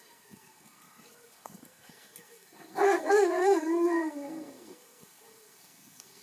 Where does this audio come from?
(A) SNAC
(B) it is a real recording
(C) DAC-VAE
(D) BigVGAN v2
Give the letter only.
A